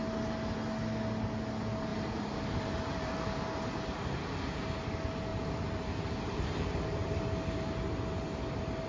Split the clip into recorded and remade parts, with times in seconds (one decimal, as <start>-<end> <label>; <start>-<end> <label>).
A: 0.0-1.9 recorded; 1.9-3.1 remade; 3.1-5.3 recorded; 5.3-7.2 remade; 7.2-8.9 recorded